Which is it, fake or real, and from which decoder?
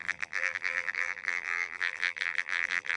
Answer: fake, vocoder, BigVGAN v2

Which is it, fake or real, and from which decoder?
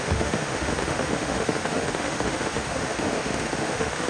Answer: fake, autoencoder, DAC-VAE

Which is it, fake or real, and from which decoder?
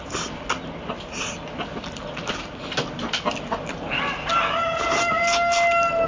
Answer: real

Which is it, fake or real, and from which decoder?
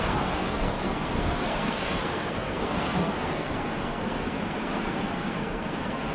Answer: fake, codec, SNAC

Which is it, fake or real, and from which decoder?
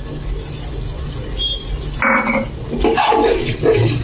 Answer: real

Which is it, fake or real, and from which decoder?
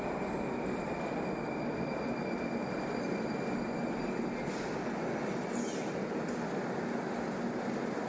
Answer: real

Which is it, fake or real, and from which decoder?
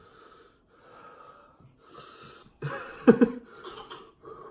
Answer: real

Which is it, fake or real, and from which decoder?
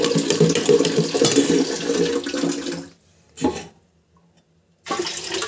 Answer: real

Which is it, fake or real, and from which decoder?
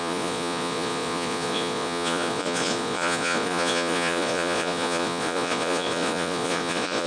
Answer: fake, vocoder, Vocos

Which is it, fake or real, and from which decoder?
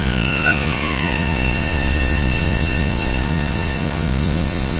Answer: fake, vocoder, Vocos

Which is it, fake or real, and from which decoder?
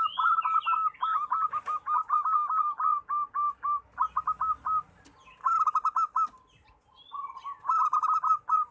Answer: real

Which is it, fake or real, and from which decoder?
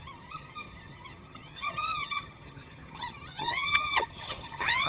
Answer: fake, vocoder, HiFi-GAN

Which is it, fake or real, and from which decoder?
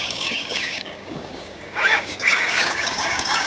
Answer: fake, codec, DAC